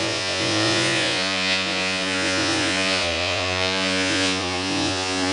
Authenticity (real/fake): fake